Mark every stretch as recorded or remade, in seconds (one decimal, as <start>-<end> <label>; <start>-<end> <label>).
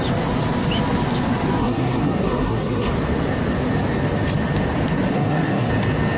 0.0-1.6 recorded; 1.6-2.9 remade; 2.9-5.1 recorded; 5.1-5.7 remade; 5.7-6.2 recorded